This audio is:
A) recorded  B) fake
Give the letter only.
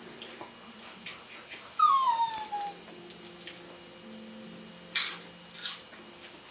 A